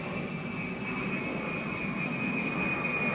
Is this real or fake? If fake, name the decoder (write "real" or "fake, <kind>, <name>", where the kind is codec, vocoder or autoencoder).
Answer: real